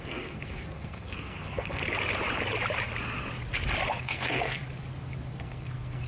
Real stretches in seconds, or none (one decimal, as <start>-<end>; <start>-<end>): 1.8-3.9; 4.6-5.3